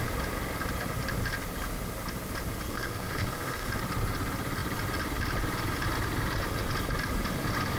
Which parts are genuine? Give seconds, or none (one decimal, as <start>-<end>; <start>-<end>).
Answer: 0.0-2.7; 3.7-7.8